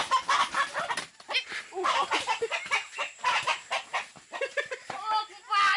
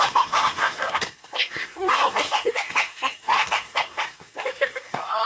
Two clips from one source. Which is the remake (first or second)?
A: second